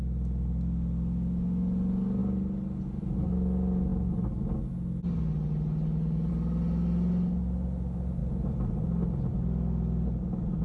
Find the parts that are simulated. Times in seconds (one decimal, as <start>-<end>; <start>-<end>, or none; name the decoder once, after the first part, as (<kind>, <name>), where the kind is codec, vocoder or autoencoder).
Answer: 8.2-9.3 (vocoder, BigVGAN v2)